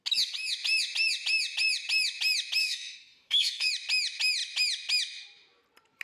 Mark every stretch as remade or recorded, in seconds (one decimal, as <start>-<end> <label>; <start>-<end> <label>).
0.0-2.6 recorded; 2.6-3.7 remade; 3.7-6.0 recorded